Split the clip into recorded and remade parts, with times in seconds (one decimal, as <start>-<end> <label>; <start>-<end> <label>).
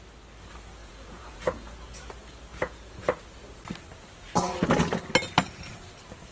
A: 0.0-0.8 recorded; 0.8-2.0 remade; 2.0-2.5 recorded; 2.5-3.2 remade; 3.2-6.3 recorded